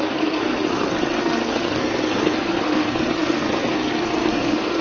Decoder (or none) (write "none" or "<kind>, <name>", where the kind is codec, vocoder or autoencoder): codec, SNAC